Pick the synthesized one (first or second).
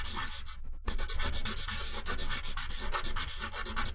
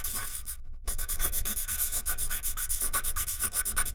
second